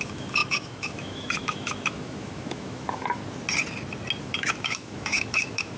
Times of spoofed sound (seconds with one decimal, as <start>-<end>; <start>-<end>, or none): 0.0-3.2; 4.2-5.8